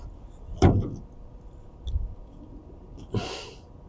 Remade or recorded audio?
recorded